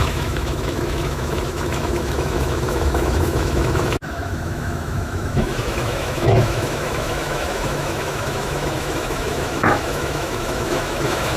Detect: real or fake fake